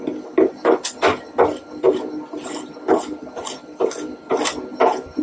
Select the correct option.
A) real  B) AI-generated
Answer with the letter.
A